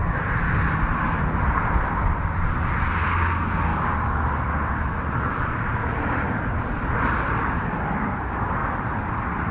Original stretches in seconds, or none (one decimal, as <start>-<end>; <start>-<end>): 1.5-3.7; 7.4-8.6